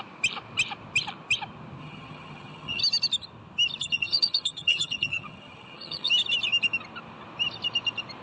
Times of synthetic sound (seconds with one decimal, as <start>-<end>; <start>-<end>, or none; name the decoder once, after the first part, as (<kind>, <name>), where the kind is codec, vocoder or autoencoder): 1.8-2.8 (vocoder, HiFi-GAN); 3.8-6.1